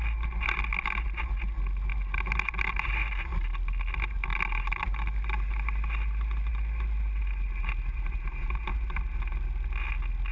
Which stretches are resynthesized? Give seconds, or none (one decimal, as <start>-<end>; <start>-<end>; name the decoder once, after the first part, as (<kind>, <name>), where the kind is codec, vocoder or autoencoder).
none